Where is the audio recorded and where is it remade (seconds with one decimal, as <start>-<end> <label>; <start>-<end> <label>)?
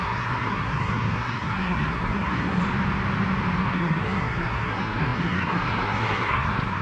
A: 0.0-2.6 remade; 2.6-3.6 recorded; 3.6-6.8 remade